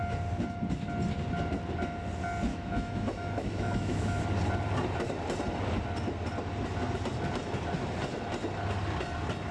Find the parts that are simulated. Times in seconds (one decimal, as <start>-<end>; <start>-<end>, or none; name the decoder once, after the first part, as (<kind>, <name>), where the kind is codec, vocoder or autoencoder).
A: 2.5-4.2 (autoencoder, DAC-VAE)